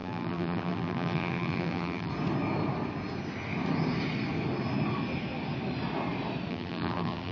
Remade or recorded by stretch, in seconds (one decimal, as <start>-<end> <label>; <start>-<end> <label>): 0.0-2.1 remade; 2.1-6.5 recorded; 6.5-7.3 remade